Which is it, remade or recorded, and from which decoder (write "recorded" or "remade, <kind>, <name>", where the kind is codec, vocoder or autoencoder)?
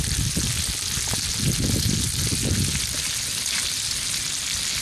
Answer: recorded